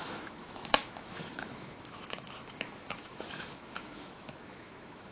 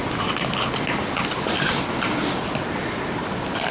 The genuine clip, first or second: second